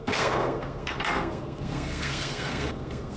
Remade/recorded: remade